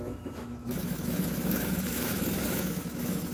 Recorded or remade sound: remade